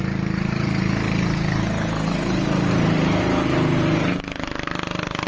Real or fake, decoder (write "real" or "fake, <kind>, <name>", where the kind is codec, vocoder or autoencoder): fake, vocoder, BigVGAN v2